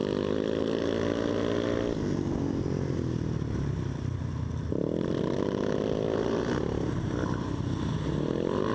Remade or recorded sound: recorded